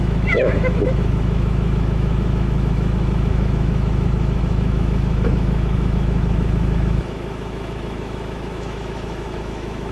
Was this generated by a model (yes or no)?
yes